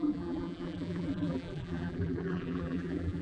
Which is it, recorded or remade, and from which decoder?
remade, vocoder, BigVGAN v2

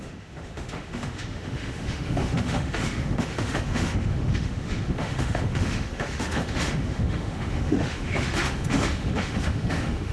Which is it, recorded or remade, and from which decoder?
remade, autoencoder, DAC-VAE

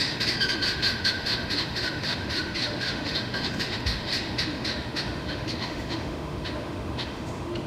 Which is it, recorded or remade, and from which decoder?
remade, autoencoder, DAC-VAE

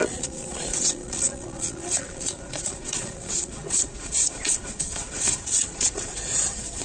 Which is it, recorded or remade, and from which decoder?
remade, vocoder, Vocos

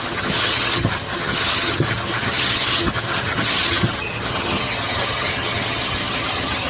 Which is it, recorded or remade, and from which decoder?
remade, vocoder, HiFi-GAN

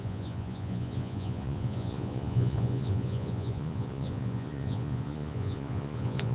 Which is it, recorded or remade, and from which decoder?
remade, vocoder, Vocos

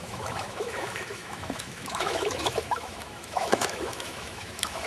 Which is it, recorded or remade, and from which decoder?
remade, autoencoder, DAC-VAE